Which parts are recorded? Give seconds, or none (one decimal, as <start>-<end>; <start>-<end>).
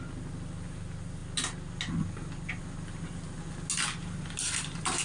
0.0-5.0